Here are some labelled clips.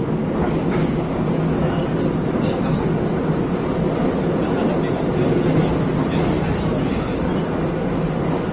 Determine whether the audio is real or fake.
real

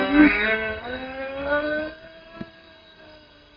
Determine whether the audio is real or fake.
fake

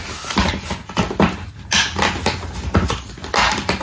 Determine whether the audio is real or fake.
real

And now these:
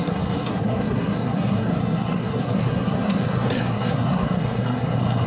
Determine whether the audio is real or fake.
fake